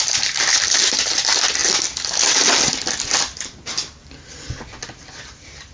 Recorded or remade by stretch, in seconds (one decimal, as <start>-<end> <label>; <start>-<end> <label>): 0.0-1.6 remade; 1.6-5.0 recorded; 5.0-5.7 remade